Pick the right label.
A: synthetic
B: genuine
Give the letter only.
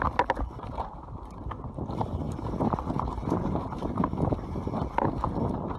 B